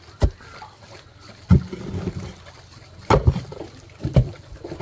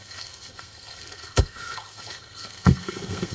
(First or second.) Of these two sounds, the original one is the first